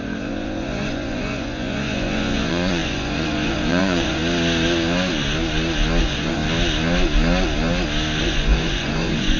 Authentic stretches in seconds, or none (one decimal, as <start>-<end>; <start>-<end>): 4.2-6.0; 6.4-8.2